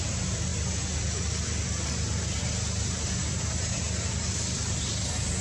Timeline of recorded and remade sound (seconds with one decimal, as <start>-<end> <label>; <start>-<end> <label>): 0.0-3.2 recorded; 3.2-3.8 remade; 3.8-5.4 recorded